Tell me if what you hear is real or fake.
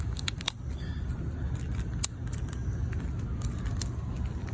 real